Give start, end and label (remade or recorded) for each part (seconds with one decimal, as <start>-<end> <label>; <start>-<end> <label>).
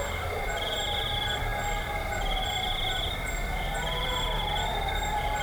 0.0-1.5 remade; 1.5-4.7 recorded; 4.7-5.4 remade